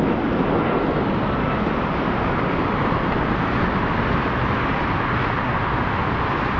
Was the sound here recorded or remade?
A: recorded